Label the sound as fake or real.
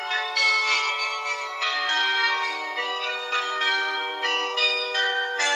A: fake